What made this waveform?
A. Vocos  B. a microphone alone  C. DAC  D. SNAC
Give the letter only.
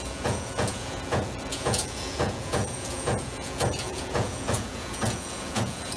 A